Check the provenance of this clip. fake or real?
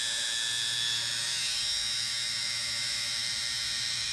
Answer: fake